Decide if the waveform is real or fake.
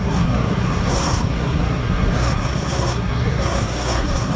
fake